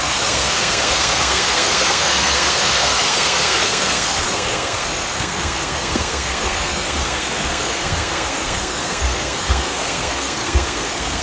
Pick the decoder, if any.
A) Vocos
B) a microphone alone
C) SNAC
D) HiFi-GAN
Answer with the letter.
C